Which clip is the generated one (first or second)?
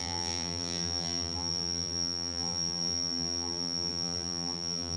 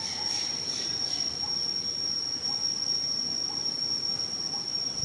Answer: first